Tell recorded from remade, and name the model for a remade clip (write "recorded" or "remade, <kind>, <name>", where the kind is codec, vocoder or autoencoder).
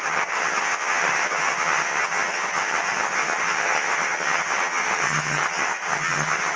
remade, vocoder, HiFi-GAN